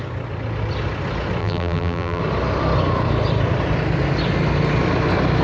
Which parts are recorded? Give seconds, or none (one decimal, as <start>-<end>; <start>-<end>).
0.0-1.4; 2.2-5.4